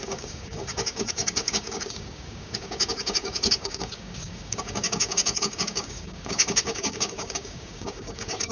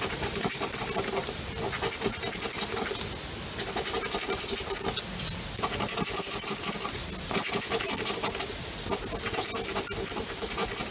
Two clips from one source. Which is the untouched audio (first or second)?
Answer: second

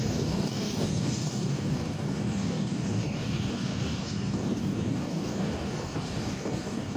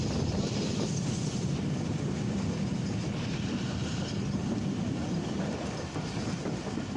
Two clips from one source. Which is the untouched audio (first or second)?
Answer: second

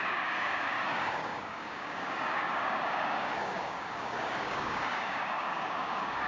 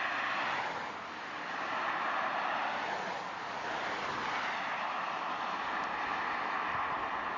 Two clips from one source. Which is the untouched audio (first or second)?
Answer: second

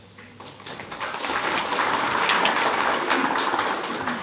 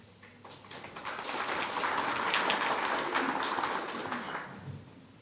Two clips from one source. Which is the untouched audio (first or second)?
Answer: second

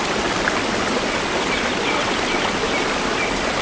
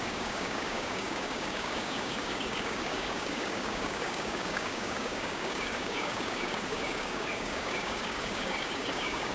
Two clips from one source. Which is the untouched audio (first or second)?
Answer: first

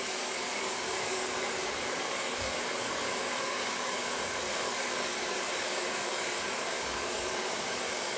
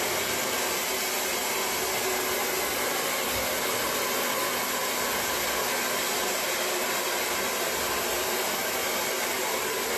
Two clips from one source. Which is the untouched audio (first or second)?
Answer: second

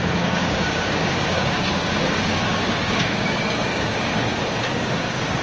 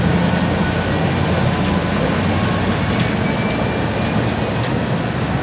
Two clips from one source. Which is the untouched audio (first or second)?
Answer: second